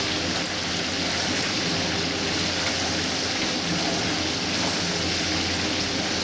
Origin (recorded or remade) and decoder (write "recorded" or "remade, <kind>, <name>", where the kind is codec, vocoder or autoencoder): recorded